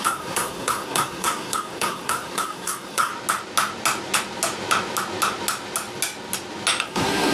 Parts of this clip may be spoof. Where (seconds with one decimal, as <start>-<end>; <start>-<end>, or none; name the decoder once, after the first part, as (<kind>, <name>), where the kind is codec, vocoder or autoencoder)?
0.0-3.1 (codec, SNAC); 6.8-7.3